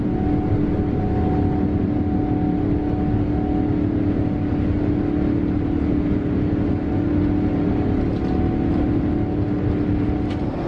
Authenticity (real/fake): real